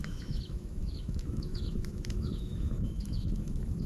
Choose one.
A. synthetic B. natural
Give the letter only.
A